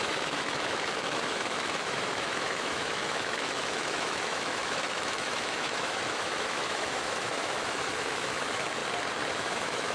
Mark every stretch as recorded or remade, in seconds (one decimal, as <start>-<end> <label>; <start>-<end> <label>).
0.0-8.8 remade; 8.8-9.3 recorded; 9.3-9.9 remade